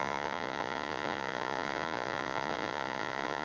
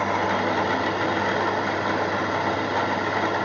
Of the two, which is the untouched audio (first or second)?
second